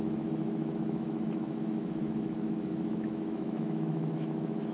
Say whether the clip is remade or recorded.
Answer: remade